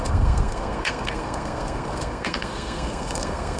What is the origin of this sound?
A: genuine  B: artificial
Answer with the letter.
B